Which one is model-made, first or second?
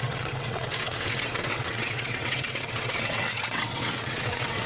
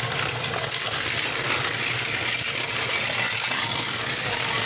first